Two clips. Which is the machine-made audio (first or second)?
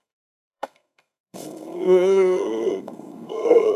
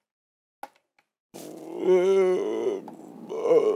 first